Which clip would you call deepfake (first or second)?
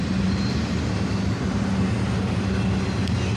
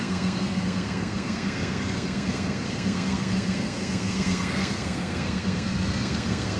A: second